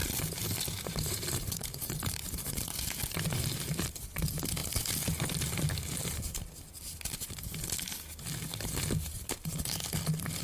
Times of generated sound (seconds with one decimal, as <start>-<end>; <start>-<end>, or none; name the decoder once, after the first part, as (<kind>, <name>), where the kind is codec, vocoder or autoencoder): 0.0-2.9 (vocoder, BigVGAN v2)